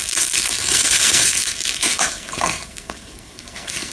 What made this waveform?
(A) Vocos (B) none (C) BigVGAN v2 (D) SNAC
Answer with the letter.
D